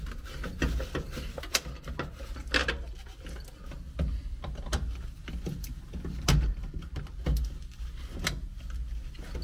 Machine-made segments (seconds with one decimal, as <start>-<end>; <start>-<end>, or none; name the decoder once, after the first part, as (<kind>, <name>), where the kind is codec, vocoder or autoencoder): none